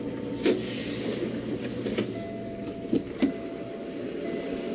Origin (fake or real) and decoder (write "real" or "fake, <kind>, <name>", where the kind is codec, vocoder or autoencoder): real